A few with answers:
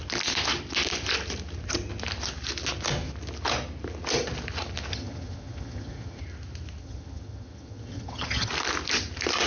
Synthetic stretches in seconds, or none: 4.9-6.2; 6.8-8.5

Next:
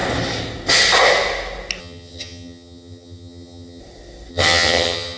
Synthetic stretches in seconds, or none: 1.8-3.8; 4.3-5.2

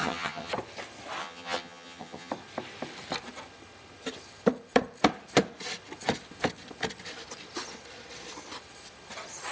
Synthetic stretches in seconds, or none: 0.0-0.5; 1.2-2.3

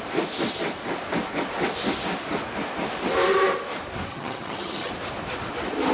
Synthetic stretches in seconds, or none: 4.1-4.9

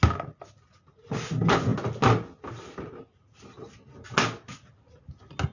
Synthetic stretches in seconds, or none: none